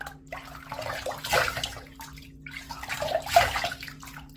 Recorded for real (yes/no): yes